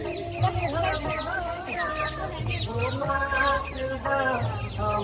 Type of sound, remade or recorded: recorded